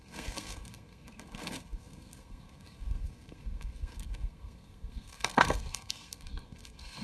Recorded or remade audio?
remade